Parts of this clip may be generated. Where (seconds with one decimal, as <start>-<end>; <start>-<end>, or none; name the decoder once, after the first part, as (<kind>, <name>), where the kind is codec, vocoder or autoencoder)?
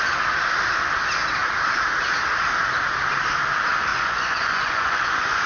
3.9-5.5 (vocoder, Vocos)